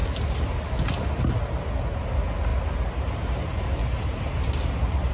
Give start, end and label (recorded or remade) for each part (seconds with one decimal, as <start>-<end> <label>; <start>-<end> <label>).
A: 0.0-5.1 recorded